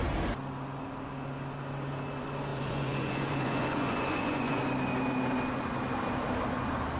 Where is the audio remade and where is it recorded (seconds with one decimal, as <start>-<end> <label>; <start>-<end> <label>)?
0.0-2.5 recorded; 2.5-4.6 remade; 4.6-7.0 recorded